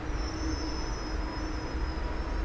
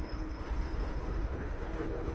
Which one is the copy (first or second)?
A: second